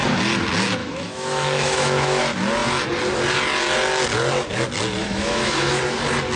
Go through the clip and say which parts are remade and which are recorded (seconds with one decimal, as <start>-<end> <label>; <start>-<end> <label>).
0.0-0.8 recorded; 0.8-2.2 remade; 2.2-5.0 recorded; 5.0-5.8 remade; 5.8-6.4 recorded